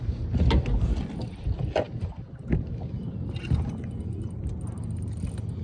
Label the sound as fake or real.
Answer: real